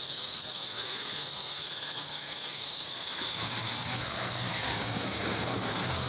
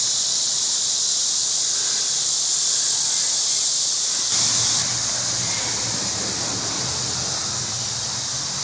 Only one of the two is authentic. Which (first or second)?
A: second